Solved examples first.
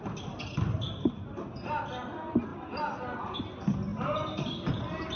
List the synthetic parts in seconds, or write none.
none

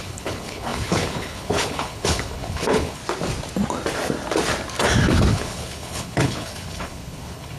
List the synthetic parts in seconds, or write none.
0.0-3.0 (codec, HILCodec); 5.3-7.6

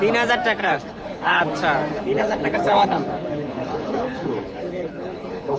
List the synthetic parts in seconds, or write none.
0.6-1.4 (codec, HILCodec); 1.9-5.6

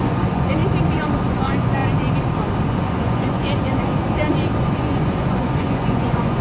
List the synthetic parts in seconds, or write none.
0.0-0.6 (vocoder, Vocos); 1.2-1.8; 2.7-3.9; 4.6-6.4